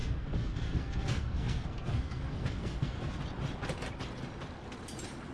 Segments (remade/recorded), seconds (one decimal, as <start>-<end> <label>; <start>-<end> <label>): 0.0-3.2 remade; 3.2-5.3 recorded